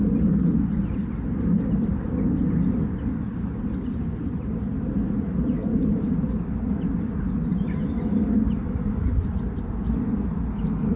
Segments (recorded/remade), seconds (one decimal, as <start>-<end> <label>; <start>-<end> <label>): 0.0-11.0 recorded